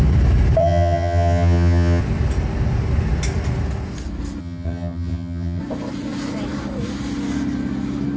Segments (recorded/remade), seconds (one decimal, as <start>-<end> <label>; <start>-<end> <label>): 0.0-0.6 recorded; 0.6-2.0 remade; 2.0-4.4 recorded; 4.4-5.6 remade; 5.6-8.2 recorded